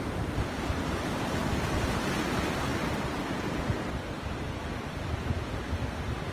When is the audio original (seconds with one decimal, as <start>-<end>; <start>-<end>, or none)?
0.0-1.4; 1.9-6.3